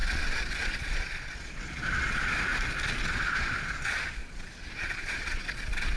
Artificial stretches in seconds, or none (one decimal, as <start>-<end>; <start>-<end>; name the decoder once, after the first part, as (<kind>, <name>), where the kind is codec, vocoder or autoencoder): 0.0-2.5 (vocoder, Vocos); 3.0-6.0